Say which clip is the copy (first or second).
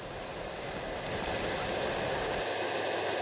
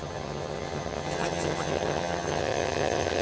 second